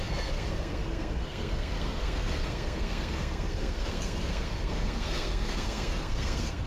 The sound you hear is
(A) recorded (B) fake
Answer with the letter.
B